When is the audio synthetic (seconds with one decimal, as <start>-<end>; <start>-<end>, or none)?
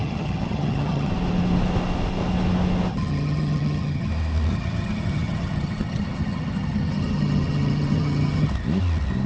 0.0-1.1; 2.9-4.1; 4.5-8.5